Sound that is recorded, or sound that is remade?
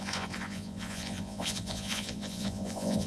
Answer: remade